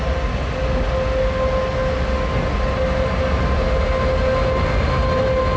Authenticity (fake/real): real